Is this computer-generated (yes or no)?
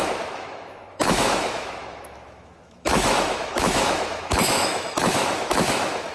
yes